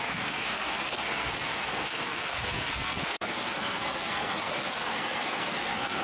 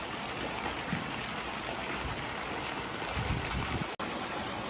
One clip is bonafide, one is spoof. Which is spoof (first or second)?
first